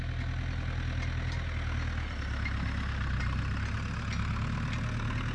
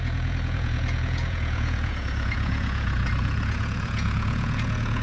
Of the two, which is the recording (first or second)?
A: first